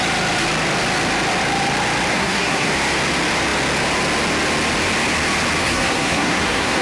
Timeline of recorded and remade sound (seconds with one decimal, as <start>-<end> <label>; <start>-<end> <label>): 0.0-2.1 recorded; 2.1-2.7 remade; 2.7-5.6 recorded; 5.6-6.8 remade